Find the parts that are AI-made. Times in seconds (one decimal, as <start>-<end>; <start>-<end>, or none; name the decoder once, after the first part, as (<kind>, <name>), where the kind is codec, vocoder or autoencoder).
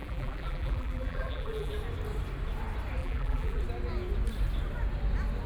0.0-1.7 (vocoder, BigVGAN v2); 3.0-3.6